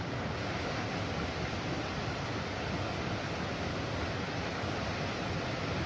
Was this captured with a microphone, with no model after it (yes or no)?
yes